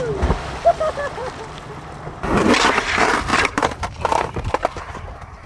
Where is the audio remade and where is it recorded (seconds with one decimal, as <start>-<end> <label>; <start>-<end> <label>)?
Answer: 0.0-1.2 recorded; 1.2-2.0 remade; 2.0-3.3 recorded; 3.3-5.5 remade